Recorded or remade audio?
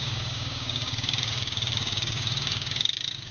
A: remade